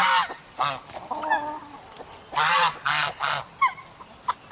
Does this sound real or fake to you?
real